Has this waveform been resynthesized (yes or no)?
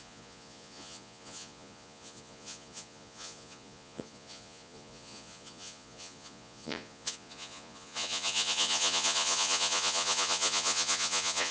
yes